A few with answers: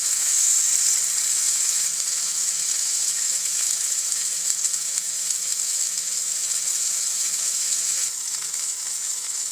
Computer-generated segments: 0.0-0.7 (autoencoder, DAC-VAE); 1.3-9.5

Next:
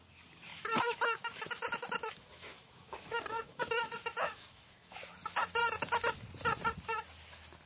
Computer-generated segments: 0.5-5.1 (autoencoder, DAC-VAE)

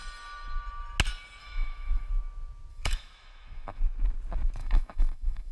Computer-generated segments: 1.4-2.1 (autoencoder, DAC-VAE); 2.7-3.8; 4.6-5.5

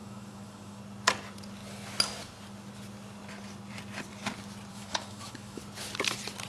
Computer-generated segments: 0.0-0.8 (autoencoder, DAC-VAE); 4.7-5.6

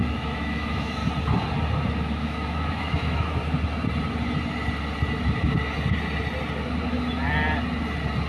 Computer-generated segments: 0.0-1.0 (autoencoder, DAC-VAE); 2.0-3.4

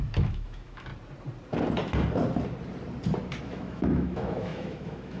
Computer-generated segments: 0.0-0.9 (autoencoder, DAC-VAE); 3.4-5.2

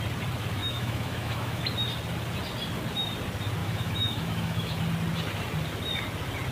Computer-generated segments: 0.6-1.6 (autoencoder, DAC-VAE); 3.6-4.8

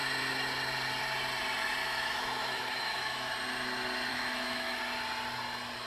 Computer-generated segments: 1.8-3.3 (autoencoder, DAC-VAE); 4.1-4.8